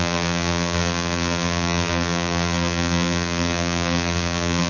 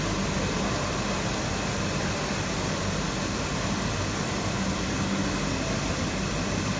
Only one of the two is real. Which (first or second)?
second